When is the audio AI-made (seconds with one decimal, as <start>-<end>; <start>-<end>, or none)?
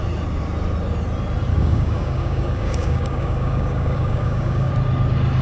1.5-4.7